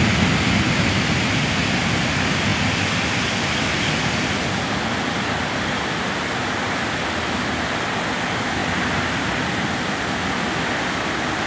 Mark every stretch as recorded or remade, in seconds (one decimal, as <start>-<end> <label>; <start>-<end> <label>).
0.0-11.5 recorded